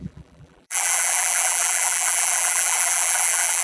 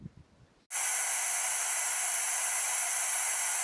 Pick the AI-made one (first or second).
first